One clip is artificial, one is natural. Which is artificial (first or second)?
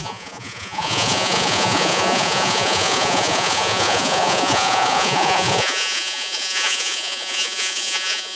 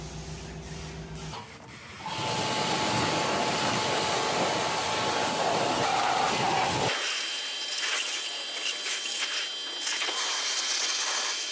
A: first